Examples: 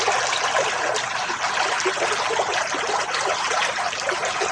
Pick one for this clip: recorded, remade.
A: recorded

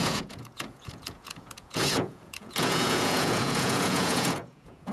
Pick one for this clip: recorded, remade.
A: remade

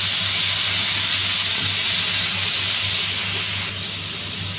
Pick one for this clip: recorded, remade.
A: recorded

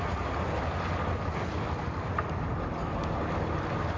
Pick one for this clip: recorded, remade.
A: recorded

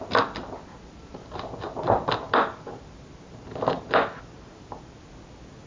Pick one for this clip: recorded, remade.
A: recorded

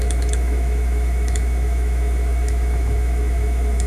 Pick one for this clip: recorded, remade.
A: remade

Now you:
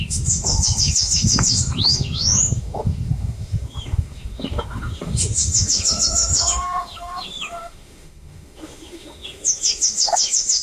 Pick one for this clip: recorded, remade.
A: remade